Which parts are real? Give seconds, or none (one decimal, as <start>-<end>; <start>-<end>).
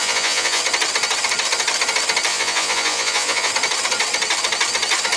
0.6-2.3; 3.5-5.2